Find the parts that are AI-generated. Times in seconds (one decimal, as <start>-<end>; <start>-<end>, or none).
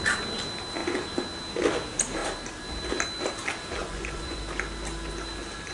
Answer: 3.8-4.4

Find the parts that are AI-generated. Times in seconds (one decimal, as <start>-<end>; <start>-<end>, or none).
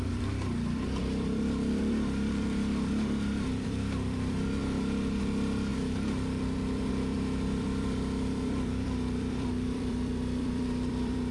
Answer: 0.0-4.6; 5.2-11.3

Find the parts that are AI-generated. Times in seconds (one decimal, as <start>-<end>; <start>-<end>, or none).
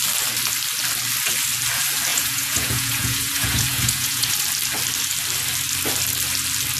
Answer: 2.1-4.3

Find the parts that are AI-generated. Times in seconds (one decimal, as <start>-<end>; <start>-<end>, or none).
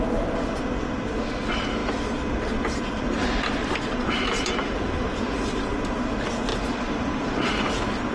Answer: 3.6-6.1; 6.5-7.6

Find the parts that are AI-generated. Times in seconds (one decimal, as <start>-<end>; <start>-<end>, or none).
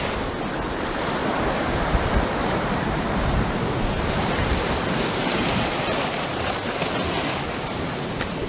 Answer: 1.2-4.6; 5.2-6.7